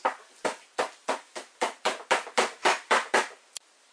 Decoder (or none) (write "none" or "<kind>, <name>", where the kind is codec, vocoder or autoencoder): none